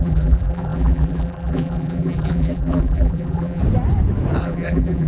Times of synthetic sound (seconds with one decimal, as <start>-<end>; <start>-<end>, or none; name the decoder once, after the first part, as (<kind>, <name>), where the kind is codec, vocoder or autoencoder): 0.0-3.6 (vocoder, BigVGAN v2); 4.4-5.1

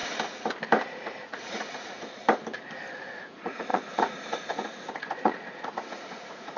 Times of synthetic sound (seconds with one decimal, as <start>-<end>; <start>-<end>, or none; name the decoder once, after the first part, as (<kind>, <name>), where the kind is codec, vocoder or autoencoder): 0.9-2.2 (vocoder, Vocos); 2.9-6.6